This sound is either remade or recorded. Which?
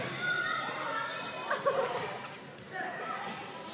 recorded